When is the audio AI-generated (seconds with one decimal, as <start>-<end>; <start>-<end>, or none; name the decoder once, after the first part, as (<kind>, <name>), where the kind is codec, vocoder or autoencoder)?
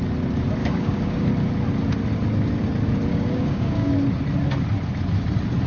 0.6-1.3 (codec, DAC); 3.1-3.9